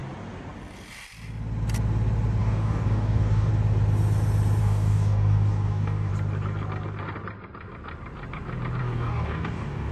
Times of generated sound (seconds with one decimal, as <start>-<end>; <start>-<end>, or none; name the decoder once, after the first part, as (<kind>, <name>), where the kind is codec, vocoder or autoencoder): 2.4-3.5 (codec, DAC); 4.6-6.1; 8.8-9.9